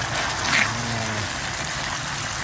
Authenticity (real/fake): real